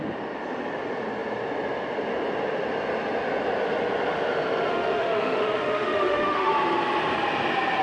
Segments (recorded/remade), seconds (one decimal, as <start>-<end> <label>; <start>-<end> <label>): 0.0-4.7 recorded; 4.7-6.5 remade; 6.5-7.8 recorded